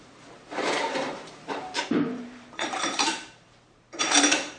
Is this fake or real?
fake